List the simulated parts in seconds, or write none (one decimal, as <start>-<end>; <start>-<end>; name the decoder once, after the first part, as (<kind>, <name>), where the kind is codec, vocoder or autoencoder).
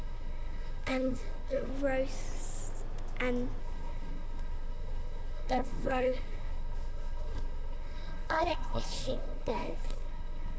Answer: 0.0-1.7 (codec, SNAC); 3.6-10.6